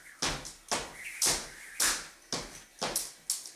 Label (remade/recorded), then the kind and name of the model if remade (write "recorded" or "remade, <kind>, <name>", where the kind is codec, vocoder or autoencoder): recorded